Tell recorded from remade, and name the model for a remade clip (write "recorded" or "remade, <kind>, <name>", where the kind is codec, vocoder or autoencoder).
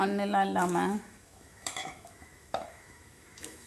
remade, autoencoder, DAC-VAE